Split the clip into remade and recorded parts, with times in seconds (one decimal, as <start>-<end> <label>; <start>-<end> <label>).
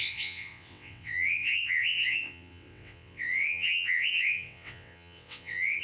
0.0-5.8 remade